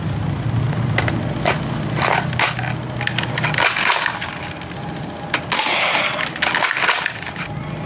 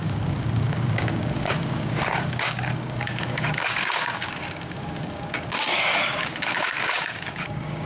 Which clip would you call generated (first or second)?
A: second